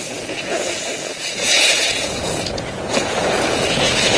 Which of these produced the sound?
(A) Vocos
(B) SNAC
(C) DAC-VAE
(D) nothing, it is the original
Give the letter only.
A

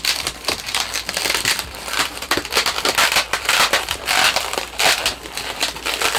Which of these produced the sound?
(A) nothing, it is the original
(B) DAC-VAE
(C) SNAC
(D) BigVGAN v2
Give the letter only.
D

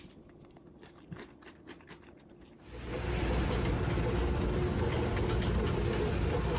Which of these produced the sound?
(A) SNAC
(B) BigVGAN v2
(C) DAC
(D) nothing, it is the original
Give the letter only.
D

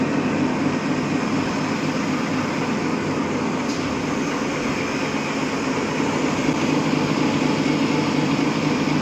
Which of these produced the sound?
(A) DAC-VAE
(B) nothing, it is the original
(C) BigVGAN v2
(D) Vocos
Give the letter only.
B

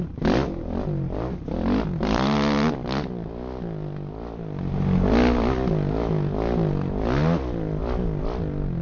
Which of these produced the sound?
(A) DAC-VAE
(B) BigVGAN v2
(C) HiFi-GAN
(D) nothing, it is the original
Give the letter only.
D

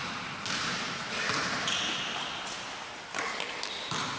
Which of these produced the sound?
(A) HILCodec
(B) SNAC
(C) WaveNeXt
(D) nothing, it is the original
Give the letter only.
D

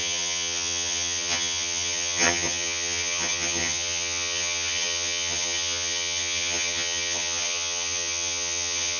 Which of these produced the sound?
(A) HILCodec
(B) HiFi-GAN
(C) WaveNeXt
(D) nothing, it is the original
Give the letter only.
B